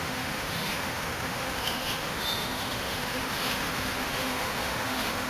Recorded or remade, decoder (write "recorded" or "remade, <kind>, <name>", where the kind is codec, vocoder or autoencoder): remade, autoencoder, DAC-VAE